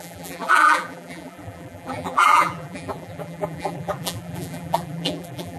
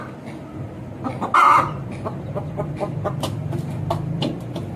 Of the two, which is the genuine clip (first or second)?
second